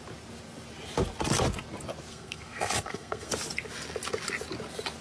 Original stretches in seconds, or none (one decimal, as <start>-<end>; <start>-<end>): 0.0-2.1; 3.3-5.0